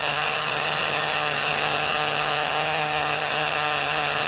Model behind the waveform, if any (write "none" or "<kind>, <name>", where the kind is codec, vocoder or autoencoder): vocoder, HiFi-GAN